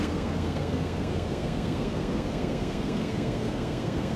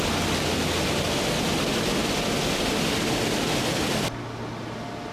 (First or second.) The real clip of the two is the second